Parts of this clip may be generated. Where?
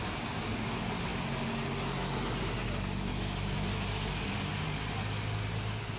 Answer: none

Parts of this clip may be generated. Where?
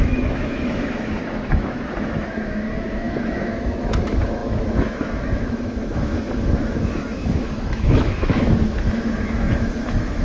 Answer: 0.0-10.2 (autoencoder, DAC-VAE)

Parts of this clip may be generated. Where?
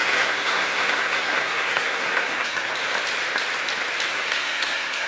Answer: 0.0-2.7 (codec, SNAC); 4.1-5.1